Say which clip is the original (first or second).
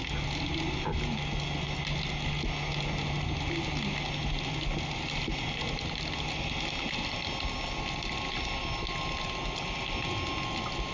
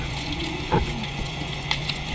first